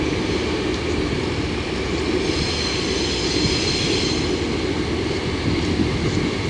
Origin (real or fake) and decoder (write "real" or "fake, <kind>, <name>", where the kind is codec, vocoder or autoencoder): real